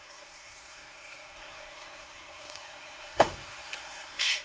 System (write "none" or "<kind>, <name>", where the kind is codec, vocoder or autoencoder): codec, SNAC